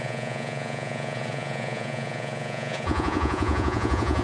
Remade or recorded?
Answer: remade